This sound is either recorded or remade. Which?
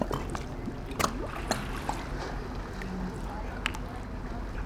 recorded